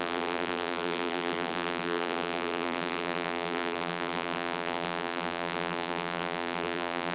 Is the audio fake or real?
fake